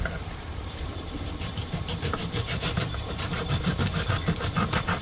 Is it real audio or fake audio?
fake